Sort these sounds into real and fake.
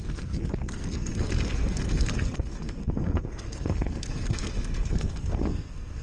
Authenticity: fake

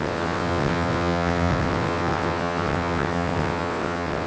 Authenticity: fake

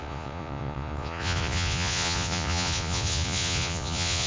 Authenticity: fake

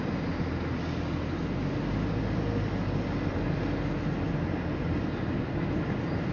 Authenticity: real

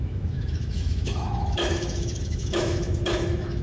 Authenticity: fake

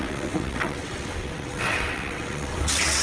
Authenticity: fake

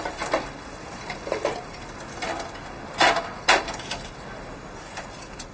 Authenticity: real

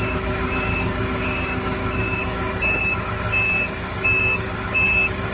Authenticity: fake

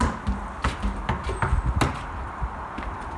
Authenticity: real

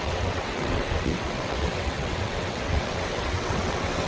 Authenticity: fake